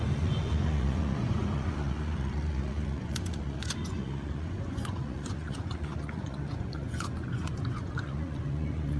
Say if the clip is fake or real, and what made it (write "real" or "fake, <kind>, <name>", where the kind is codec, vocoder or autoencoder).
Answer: fake, vocoder, Vocos